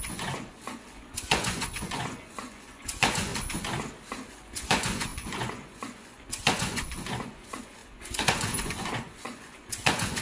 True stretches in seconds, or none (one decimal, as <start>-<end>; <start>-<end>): 3.3-4.3